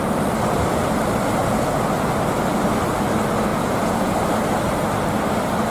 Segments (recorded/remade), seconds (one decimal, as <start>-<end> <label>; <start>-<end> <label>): 0.0-1.4 recorded; 1.4-1.9 remade; 1.9-3.5 recorded; 3.5-4.1 remade; 4.1-5.7 recorded